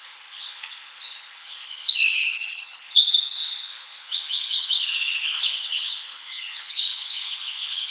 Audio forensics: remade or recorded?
remade